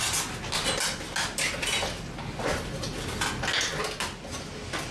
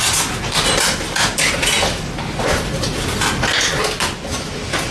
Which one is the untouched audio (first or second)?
first